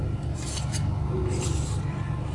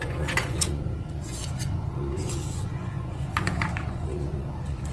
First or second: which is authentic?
first